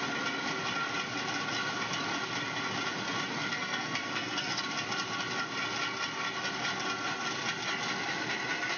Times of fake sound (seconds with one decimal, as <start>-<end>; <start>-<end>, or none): 3.4-4.6